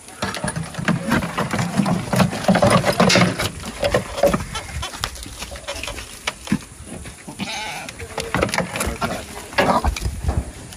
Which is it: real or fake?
real